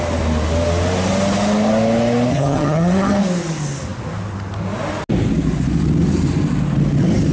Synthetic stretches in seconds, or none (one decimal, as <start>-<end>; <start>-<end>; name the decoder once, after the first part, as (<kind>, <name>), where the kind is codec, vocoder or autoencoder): 2.3-3.2 (vocoder, HiFi-GAN)